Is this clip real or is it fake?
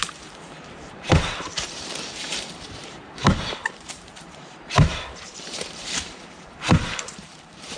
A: fake